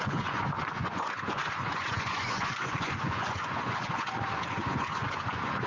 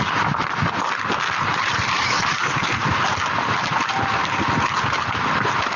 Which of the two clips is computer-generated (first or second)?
first